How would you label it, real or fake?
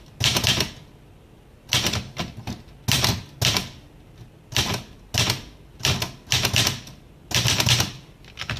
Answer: real